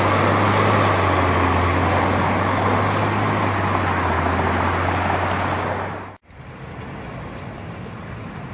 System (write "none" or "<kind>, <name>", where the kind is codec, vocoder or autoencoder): none